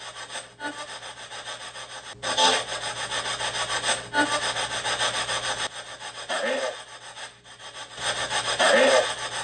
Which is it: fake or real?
real